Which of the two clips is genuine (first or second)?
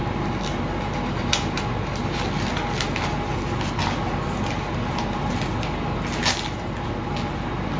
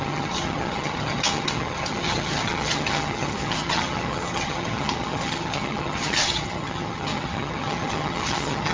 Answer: first